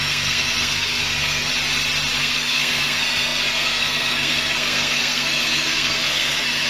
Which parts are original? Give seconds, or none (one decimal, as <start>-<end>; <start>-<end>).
1.5-2.2